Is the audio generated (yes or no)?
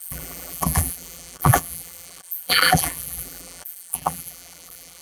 yes